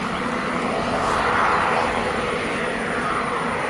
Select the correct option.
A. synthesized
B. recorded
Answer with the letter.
B